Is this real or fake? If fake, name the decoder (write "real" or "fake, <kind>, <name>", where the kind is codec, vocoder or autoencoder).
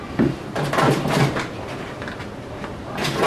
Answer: real